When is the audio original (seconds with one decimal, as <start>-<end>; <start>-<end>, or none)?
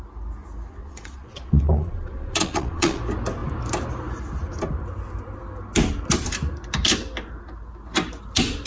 0.0-0.8; 3.0-8.7